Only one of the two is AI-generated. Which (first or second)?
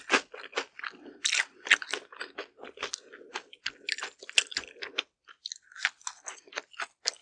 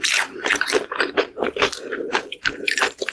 second